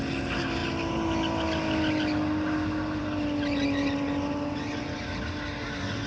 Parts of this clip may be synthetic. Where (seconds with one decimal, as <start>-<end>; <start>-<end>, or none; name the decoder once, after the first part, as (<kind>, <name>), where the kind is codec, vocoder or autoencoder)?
none